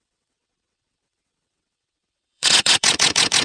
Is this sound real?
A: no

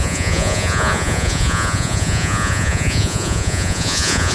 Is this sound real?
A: no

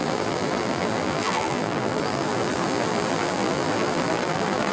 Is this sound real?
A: no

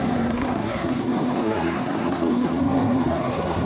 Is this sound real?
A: no